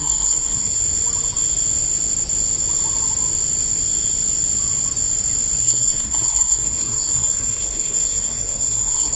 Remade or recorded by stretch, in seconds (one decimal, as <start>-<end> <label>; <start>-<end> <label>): 0.0-0.8 remade; 0.8-5.6 recorded; 5.6-9.2 remade